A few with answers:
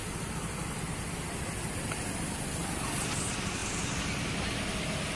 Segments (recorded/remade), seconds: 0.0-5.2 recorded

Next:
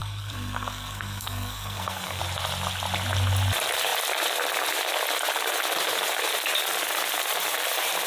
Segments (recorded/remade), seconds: 0.0-2.2 remade; 2.2-8.1 recorded

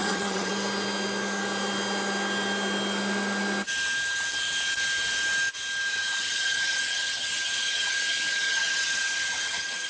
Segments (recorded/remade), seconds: 0.0-0.5 remade; 0.5-5.9 recorded; 5.9-9.9 remade

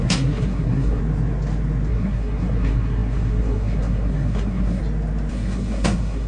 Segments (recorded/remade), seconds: 0.0-1.0 remade; 1.0-1.9 recorded; 1.9-4.8 remade; 4.8-5.3 recorded; 5.3-6.3 remade

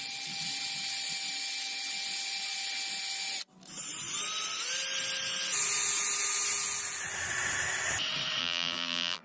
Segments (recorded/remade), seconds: 0.0-8.4 recorded; 8.4-9.2 remade

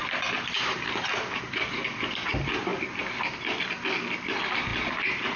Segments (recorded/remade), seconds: 0.0-2.3 remade; 2.3-2.7 recorded; 2.7-4.2 remade; 4.2-4.7 recorded; 4.7-5.4 remade

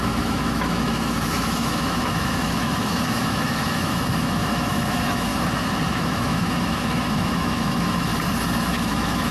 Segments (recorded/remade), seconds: 0.0-5.3 remade; 5.3-5.9 recorded; 5.9-8.1 remade; 8.1-8.7 recorded; 8.7-9.3 remade

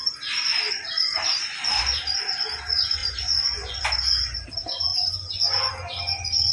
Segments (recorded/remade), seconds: 0.0-3.0 recorded; 3.0-3.8 remade; 3.8-4.9 recorded; 4.9-5.7 remade; 5.7-6.5 recorded